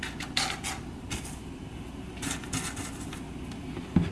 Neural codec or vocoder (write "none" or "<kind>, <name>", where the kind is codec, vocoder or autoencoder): none